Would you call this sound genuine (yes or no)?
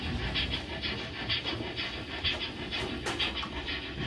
yes